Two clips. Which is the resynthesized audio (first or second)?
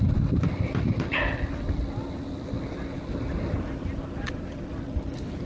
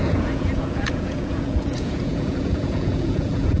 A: second